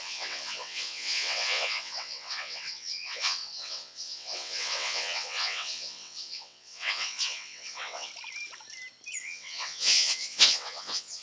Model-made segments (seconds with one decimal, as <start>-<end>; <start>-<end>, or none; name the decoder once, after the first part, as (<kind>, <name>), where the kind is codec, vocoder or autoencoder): 0.0-8.1 (vocoder, WaveNeXt); 9.2-11.2